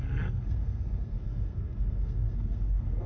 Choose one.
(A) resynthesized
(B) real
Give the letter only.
A